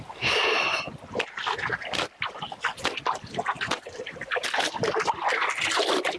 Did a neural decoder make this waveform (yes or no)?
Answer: no